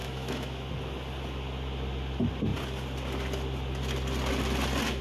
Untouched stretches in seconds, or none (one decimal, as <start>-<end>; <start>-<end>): 0.7-5.0